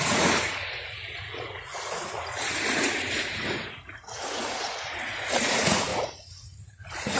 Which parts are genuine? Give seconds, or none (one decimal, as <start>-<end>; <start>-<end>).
none